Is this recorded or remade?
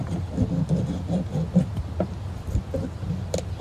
recorded